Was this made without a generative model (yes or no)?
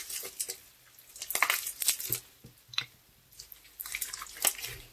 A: yes